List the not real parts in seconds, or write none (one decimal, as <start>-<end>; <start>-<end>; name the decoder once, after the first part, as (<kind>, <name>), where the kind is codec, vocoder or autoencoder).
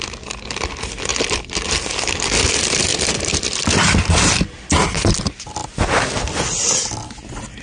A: 1.1-1.8 (vocoder, BigVGAN v2); 2.9-4.1